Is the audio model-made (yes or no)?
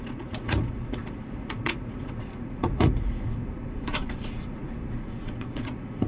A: yes